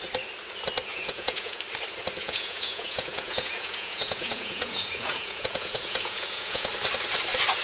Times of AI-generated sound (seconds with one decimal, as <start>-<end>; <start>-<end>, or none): 0.9-1.6; 2.2-6.7